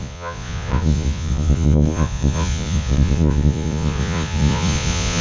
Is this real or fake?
fake